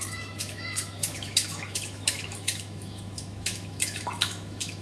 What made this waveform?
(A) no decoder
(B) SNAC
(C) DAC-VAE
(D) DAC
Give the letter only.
C